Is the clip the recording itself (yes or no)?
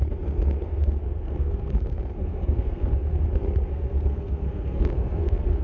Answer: no